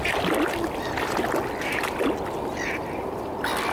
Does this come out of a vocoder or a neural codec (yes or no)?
no